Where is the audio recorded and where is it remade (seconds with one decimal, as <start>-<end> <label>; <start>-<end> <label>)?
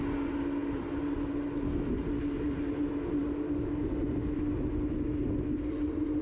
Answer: 0.0-6.2 recorded